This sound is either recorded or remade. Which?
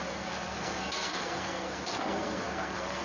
remade